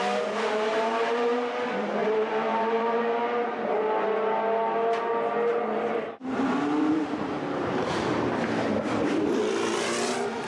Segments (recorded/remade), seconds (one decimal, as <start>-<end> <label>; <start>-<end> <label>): 0.0-2.0 recorded; 2.0-3.0 remade; 3.0-5.5 recorded; 5.5-10.1 remade; 10.1-10.5 recorded